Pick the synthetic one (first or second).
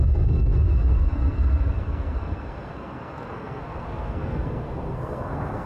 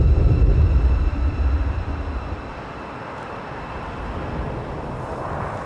first